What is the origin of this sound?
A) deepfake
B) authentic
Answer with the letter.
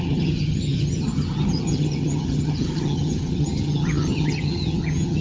A